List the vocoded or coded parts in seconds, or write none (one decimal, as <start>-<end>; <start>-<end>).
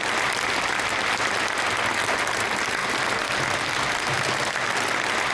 none